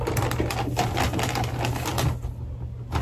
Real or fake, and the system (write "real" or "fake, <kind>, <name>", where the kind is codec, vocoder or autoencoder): real